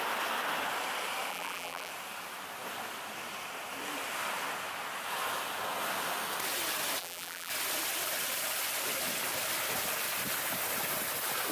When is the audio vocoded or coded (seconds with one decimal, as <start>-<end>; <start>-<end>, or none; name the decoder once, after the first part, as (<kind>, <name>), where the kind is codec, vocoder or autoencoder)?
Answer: 1.3-1.9 (vocoder, BigVGAN v2); 7.0-7.5